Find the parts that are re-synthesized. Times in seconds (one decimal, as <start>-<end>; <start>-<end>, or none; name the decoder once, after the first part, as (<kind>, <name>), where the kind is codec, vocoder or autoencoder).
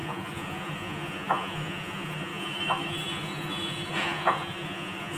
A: 0.0-5.2 (vocoder, Vocos)